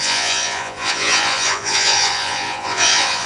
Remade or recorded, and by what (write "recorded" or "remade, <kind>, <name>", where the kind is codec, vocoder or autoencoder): remade, vocoder, Vocos